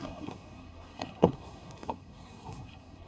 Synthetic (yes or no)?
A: yes